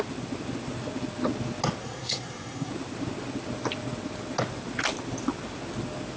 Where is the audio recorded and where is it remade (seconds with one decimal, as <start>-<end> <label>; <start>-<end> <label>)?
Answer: 0.0-1.8 recorded; 1.8-2.7 remade; 2.7-6.2 recorded